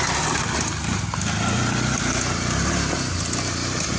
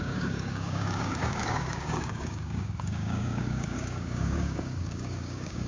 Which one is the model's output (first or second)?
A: second